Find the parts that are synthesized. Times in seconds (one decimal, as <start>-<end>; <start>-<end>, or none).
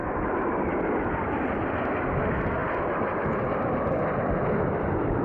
0.0-1.7; 2.6-4.3